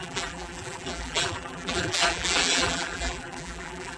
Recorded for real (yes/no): no